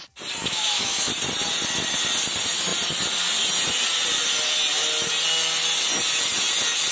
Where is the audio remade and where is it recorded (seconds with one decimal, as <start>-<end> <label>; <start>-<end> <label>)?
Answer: 0.0-0.4 recorded; 0.4-1.1 remade; 1.1-6.9 recorded